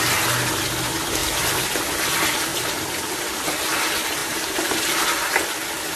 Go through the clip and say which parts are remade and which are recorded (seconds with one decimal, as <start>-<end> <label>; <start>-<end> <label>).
0.0-2.5 recorded; 2.5-3.3 remade; 3.3-4.2 recorded; 4.2-4.8 remade; 4.8-6.0 recorded